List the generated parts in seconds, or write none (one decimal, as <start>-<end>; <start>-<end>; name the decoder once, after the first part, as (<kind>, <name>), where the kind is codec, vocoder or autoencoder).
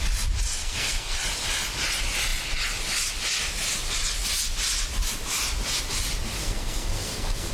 0.6-1.2 (codec, SNAC); 6.4-7.5